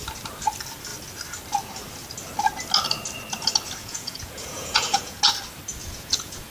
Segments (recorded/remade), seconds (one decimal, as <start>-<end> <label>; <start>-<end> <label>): 0.0-3.8 recorded; 3.8-5.2 remade; 5.2-5.8 recorded; 5.8-6.5 remade